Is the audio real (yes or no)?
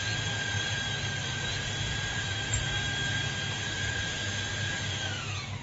yes